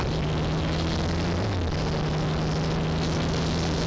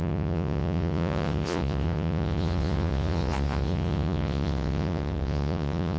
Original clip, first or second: first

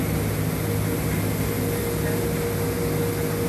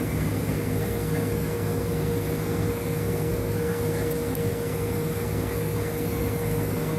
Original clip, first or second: first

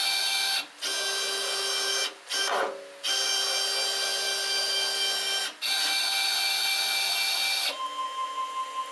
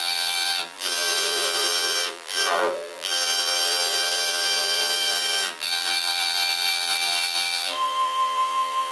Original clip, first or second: first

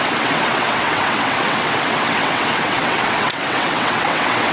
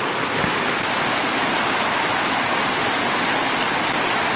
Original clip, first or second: second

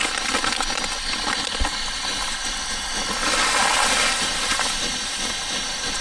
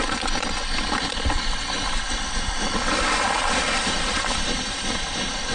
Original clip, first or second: first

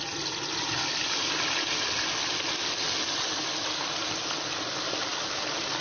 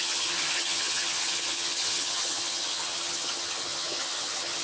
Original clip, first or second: first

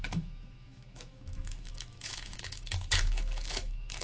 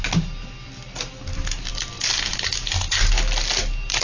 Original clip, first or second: second